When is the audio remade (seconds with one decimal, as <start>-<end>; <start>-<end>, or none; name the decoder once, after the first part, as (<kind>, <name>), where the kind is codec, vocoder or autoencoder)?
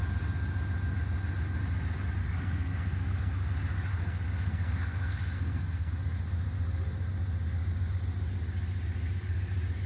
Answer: 2.2-3.5 (codec, SNAC); 3.9-5.9